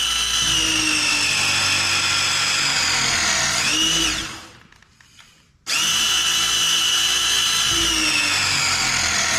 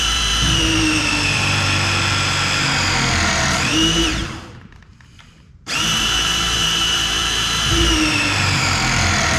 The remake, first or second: second